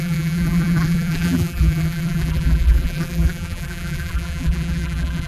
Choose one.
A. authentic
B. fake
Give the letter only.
B